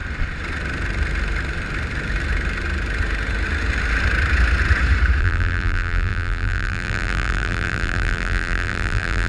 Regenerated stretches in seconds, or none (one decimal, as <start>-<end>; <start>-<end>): 5.2-9.3